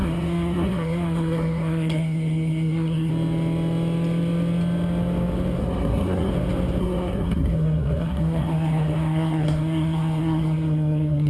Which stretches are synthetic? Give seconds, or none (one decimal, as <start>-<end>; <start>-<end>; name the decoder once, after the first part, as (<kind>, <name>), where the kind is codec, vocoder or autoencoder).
0.0-3.1 (codec, SNAC); 5.6-6.3; 6.8-11.3